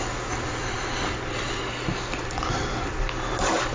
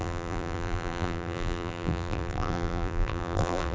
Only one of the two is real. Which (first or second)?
first